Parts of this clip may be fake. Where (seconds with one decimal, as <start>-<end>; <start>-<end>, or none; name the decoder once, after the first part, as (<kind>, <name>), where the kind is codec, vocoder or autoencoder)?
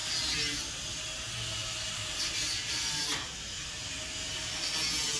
1.6-4.7 (vocoder, BigVGAN v2)